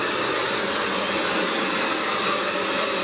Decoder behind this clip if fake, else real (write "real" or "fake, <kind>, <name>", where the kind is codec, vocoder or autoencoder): real